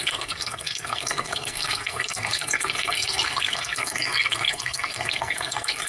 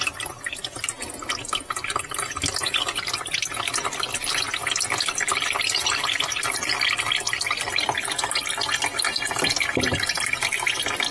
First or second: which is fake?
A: first